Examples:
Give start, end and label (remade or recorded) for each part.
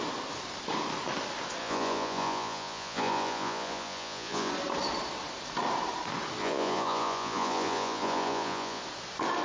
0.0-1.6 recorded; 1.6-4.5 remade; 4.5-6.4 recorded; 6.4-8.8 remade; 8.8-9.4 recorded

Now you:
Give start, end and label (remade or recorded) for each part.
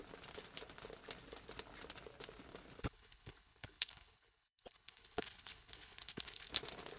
0.0-2.8 recorded; 2.8-6.5 remade; 6.5-7.0 recorded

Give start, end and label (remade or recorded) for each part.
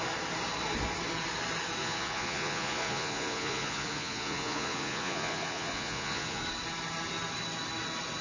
0.0-1.8 recorded; 1.8-6.4 remade; 6.4-8.2 recorded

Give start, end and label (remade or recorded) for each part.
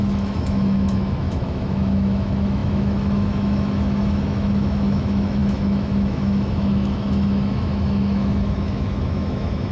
0.0-9.7 remade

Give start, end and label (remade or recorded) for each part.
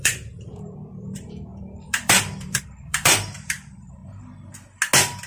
0.0-4.0 remade; 4.0-5.3 recorded